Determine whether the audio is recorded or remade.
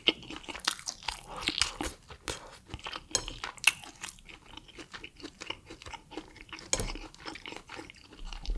recorded